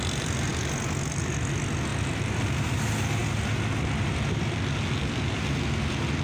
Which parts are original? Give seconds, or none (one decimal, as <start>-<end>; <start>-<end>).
0.0-6.2